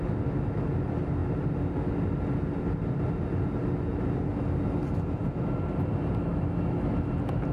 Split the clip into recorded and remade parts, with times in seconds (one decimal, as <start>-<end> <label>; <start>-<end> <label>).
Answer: 0.0-6.3 recorded; 6.3-6.9 remade; 6.9-7.5 recorded